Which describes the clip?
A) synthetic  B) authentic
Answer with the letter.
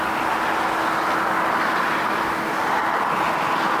B